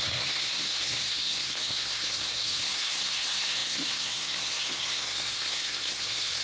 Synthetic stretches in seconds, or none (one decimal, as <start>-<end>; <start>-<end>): 0.0-6.4